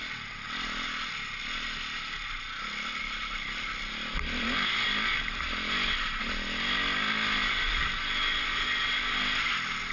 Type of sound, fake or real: real